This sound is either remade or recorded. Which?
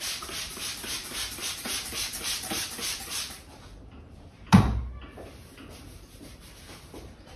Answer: remade